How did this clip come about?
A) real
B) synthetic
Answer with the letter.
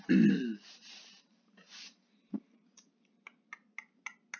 A